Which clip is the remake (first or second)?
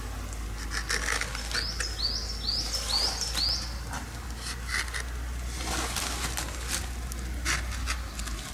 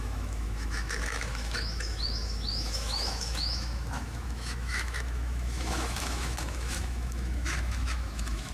second